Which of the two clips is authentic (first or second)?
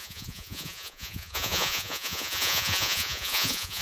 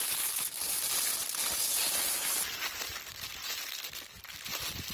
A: second